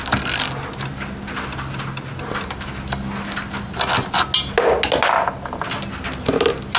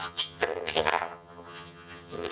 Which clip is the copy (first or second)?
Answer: second